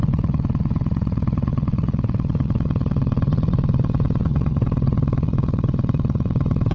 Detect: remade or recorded remade